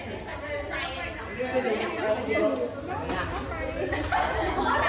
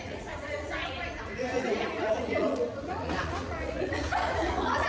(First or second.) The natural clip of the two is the first